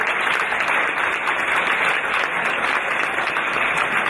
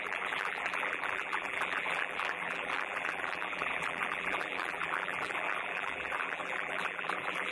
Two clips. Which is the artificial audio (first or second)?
second